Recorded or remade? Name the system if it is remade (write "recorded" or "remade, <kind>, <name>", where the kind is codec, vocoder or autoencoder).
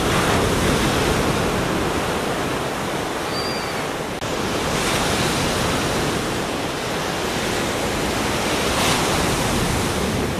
recorded